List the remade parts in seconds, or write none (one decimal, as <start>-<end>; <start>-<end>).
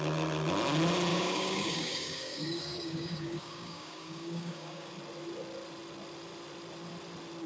1.1-4.9